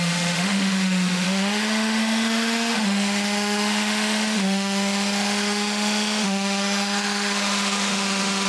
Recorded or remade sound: remade